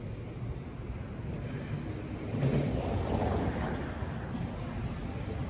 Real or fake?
real